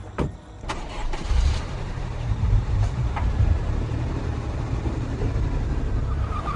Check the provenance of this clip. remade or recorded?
remade